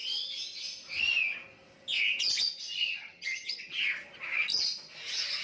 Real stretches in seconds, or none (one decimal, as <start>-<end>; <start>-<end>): 0.0-3.0; 3.7-5.4